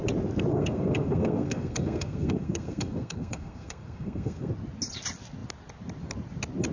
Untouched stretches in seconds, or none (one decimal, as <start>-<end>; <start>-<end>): 0.0-0.5; 4.5-6.7